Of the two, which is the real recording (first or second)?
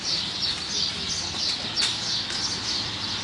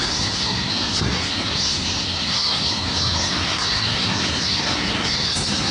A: first